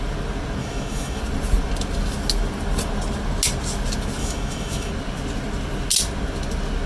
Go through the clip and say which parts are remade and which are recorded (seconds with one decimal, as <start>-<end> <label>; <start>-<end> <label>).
0.0-0.6 recorded; 0.6-1.2 remade; 1.2-4.2 recorded; 4.2-4.9 remade; 4.9-6.9 recorded